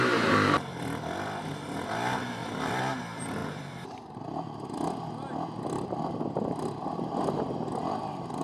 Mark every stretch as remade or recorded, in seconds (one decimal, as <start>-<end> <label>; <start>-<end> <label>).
0.0-2.4 recorded; 2.4-3.0 remade; 3.0-3.4 recorded; 3.4-3.9 remade; 3.9-8.4 recorded